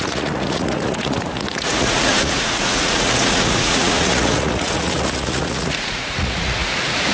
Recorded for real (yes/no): no